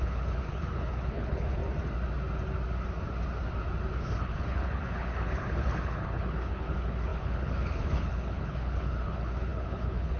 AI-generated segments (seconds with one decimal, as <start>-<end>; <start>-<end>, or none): 0.0-1.6; 3.9-10.2